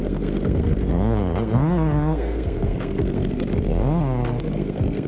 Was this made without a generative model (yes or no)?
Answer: no